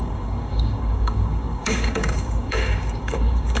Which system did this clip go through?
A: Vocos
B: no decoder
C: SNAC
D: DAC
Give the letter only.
D